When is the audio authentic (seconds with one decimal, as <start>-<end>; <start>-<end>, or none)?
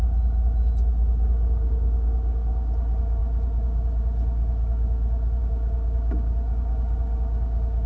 0.0-7.9